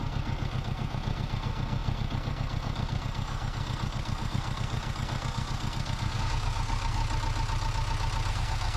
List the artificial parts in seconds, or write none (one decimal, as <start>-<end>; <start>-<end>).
0.0-7.0; 8.3-8.8